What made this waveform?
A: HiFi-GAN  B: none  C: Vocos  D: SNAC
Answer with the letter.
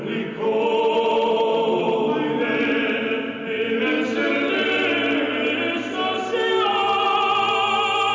B